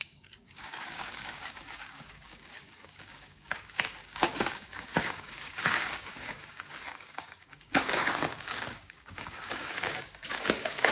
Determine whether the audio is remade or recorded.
remade